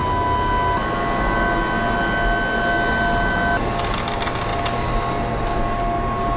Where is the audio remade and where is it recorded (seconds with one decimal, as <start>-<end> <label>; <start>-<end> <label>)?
0.0-6.4 recorded